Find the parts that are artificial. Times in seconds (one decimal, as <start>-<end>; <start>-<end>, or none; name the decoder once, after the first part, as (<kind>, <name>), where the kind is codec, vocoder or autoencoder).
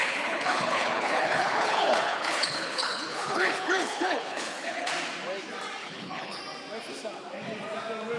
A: 0.0-4.9 (codec, HILCodec); 5.8-6.4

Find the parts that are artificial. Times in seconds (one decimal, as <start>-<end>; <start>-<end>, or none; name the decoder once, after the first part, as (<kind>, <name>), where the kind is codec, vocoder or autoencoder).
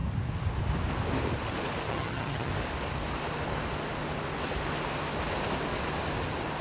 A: 1.9-2.5 (vocoder, HiFi-GAN)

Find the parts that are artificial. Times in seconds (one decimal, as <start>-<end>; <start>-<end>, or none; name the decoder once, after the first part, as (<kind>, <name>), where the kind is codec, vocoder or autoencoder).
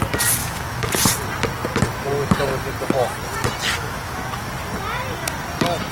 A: 0.4-0.9 (autoencoder, DAC-VAE); 3.7-4.5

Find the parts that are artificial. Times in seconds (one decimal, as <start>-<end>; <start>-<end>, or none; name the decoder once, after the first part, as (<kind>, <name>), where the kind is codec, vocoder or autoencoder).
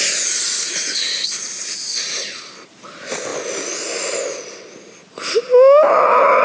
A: none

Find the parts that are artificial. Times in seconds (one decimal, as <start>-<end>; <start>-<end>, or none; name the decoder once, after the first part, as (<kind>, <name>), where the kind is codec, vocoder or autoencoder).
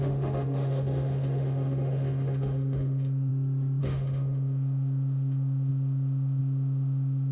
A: 0.0-3.3 (autoencoder, DAC-VAE); 3.8-7.3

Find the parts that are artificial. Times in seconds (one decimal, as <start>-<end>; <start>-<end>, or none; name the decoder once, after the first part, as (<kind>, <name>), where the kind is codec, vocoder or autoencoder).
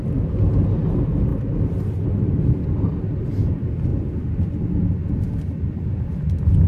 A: none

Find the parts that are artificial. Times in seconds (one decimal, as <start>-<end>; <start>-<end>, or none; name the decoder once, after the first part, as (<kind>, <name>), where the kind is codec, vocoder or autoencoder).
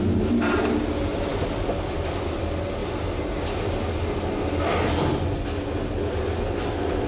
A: none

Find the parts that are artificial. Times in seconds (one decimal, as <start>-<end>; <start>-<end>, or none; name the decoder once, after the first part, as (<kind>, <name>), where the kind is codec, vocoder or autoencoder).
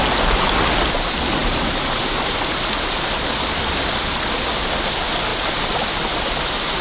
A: 1.4-2.4 (vocoder, BigVGAN v2)